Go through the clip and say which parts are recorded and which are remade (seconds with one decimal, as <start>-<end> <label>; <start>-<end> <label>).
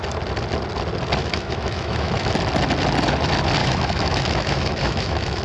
0.0-1.2 recorded; 1.2-2.3 remade; 2.3-3.6 recorded; 3.6-5.4 remade